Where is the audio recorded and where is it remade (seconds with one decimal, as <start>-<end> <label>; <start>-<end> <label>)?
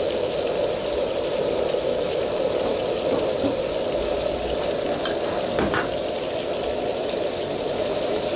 0.0-0.6 recorded; 0.6-2.8 remade; 2.8-6.9 recorded; 6.9-8.4 remade